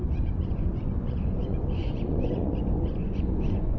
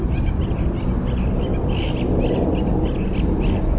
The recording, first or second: second